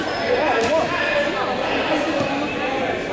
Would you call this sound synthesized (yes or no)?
no